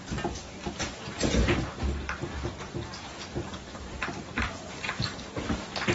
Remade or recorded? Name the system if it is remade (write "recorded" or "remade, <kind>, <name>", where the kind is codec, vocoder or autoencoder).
recorded